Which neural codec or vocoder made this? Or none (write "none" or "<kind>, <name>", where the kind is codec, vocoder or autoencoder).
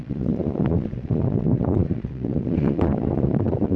vocoder, Vocos